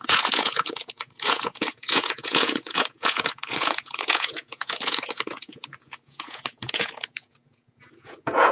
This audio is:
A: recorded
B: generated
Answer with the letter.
B